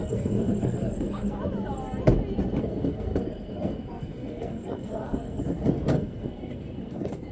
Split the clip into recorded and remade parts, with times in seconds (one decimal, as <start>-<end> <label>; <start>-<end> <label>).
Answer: 0.0-1.4 remade; 1.4-2.6 recorded; 2.6-7.3 remade